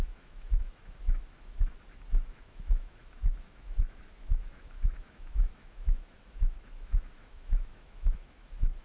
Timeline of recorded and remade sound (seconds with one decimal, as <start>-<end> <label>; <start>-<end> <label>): 0.0-1.7 remade; 1.7-2.3 recorded; 2.3-8.8 remade